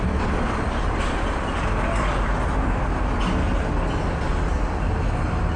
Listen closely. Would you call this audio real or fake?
real